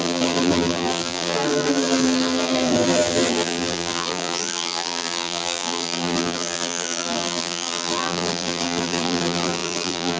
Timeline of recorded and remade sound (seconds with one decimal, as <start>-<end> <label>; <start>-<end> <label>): 0.0-10.2 remade